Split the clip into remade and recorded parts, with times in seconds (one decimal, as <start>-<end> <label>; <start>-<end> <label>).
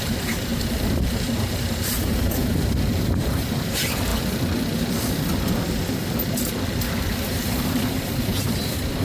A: 0.0-4.1 remade; 4.1-7.1 recorded; 7.1-9.0 remade